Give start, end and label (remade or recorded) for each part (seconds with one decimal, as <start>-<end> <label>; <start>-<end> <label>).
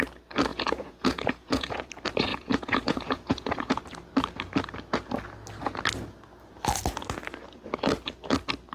0.0-0.5 recorded; 0.5-1.9 remade; 1.9-2.3 recorded; 2.3-3.8 remade; 3.8-8.7 recorded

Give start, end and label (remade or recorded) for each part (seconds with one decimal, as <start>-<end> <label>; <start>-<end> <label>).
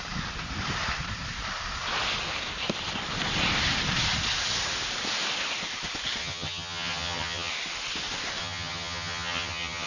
0.0-6.2 recorded; 6.2-7.5 remade; 7.5-8.4 recorded; 8.4-9.9 remade